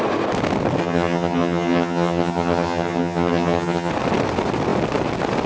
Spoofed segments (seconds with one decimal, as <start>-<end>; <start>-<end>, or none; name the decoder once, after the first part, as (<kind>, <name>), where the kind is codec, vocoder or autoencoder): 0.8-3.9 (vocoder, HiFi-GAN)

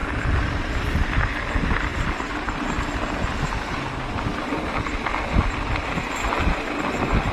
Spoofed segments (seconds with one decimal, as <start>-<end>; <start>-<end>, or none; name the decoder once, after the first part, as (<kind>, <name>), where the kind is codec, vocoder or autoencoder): 0.0-0.8 (vocoder, BigVGAN v2); 4.3-5.4

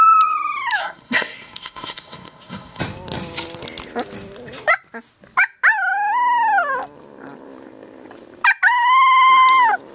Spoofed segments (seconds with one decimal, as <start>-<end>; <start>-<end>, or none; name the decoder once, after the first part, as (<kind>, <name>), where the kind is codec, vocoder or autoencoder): 0.8-2.8 (codec, SNAC)

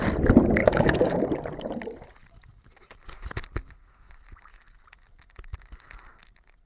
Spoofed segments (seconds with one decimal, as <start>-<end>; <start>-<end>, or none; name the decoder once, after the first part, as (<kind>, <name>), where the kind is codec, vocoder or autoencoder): 0.6-1.2 (codec, DAC)

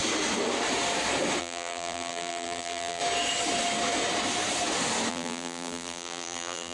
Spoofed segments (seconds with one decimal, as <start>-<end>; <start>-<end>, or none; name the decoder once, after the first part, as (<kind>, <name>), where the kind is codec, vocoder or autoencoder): 1.4-3.0 (vocoder, BigVGAN v2); 5.1-6.7

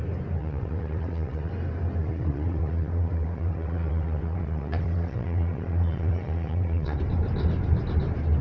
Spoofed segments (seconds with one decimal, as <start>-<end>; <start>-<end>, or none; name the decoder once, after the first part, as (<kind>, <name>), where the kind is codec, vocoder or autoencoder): 0.4-1.5 (vocoder, WaveNeXt); 2.0-7.0

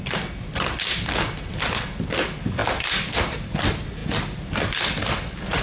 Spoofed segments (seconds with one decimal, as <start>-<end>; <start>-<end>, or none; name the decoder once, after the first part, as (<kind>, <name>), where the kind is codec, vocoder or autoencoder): none